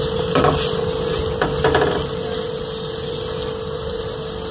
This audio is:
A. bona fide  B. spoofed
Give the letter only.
A